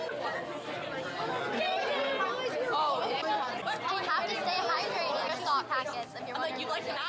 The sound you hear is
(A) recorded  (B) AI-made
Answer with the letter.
A